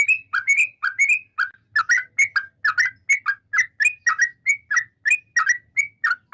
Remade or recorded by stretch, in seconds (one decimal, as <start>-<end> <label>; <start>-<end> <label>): 0.0-6.3 recorded

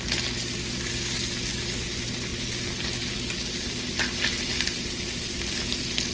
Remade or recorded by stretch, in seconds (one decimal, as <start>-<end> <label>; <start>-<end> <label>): 0.0-6.1 recorded

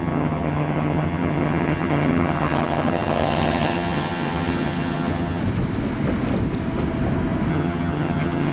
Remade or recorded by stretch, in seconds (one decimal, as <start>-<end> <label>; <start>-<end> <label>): 0.0-5.4 remade; 5.4-7.5 recorded; 7.5-8.5 remade

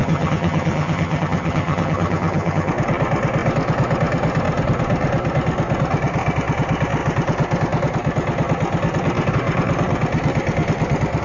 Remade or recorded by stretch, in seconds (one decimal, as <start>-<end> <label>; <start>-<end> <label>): 0.0-2.7 remade; 2.7-11.2 recorded

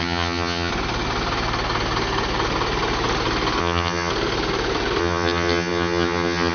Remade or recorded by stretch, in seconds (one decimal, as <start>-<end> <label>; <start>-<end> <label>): 0.0-0.7 remade; 0.7-3.6 recorded; 3.6-4.1 remade; 4.1-5.0 recorded; 5.0-6.5 remade

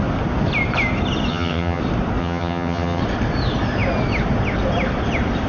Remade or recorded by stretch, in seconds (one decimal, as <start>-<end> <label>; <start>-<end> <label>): 0.0-1.3 recorded; 1.3-1.8 remade; 1.8-2.2 recorded; 2.2-3.0 remade; 3.0-5.5 recorded

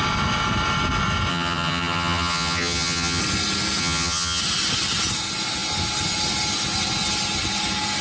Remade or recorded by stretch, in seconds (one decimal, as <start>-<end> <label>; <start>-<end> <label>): 0.0-1.3 recorded; 1.3-3.2 remade; 3.2-3.8 recorded; 3.8-4.4 remade; 4.4-8.0 recorded